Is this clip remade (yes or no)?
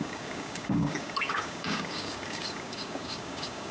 yes